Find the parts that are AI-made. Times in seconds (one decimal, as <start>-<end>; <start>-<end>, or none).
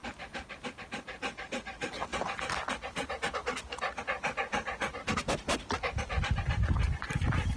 none